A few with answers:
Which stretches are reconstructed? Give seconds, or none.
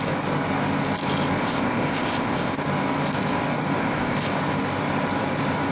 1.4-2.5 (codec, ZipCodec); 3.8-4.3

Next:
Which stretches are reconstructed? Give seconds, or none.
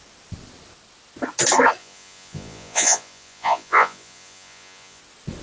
1.8-5.0 (vocoder, Vocos)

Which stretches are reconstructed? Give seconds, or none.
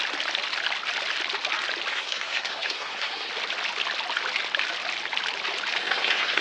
1.9-3.3 (codec, SNAC); 5.8-6.4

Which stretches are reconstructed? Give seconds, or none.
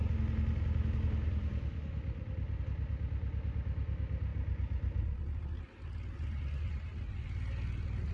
none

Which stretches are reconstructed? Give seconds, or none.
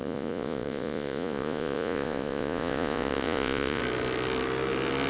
0.0-3.8 (vocoder, Vocos)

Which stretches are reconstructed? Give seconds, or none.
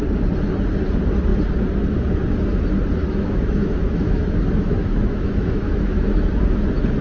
3.0-6.3 (autoencoder, DAC-VAE)